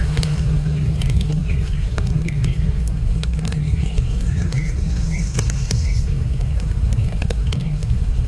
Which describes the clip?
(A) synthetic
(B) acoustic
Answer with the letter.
A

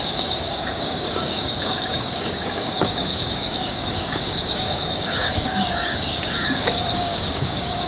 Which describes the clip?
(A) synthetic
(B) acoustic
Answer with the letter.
A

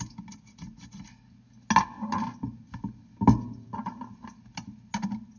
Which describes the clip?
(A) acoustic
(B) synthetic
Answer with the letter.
A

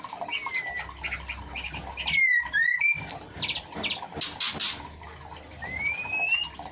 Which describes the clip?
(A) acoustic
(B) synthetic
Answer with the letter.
A